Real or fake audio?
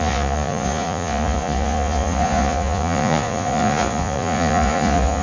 fake